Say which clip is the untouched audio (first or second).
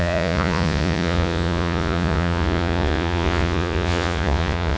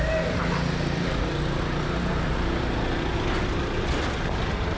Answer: second